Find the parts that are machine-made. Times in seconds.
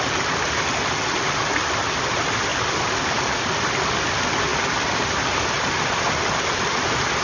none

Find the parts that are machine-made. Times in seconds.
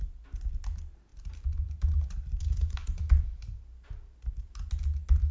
1.1-4.3 (vocoder, BigVGAN v2)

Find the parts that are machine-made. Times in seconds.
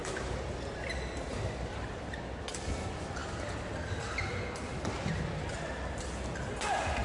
none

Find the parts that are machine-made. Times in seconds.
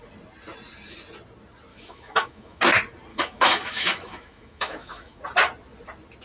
1.7-2.6 (autoencoder, DAC-VAE); 3.1-5.2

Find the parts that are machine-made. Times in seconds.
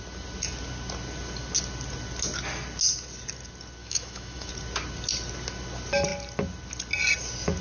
3.8-4.5 (autoencoder, DAC-VAE)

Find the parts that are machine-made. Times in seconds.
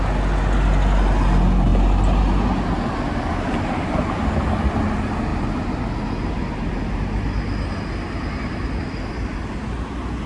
none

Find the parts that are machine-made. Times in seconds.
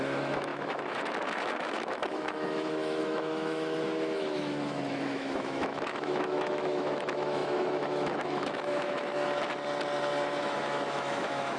0.0-9.1 (autoencoder, DAC-VAE); 10.4-11.6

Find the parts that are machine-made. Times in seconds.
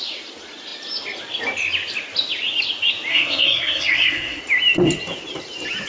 3.1-4.4 (codec, SNAC)